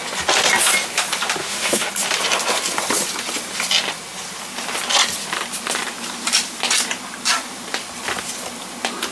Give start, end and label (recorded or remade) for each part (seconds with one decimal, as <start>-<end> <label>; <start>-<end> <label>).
0.0-1.4 recorded; 1.4-1.9 remade; 1.9-9.1 recorded